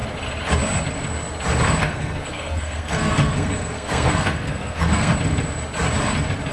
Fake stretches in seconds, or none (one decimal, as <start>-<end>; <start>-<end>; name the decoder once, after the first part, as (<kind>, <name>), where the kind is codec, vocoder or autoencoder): 1.8-5.1 (codec, SNAC)